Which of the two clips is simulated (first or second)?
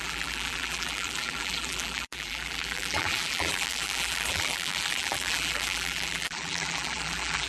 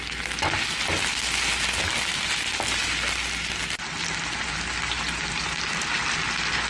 first